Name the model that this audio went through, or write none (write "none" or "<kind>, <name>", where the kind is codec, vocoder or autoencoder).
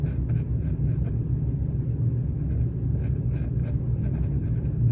none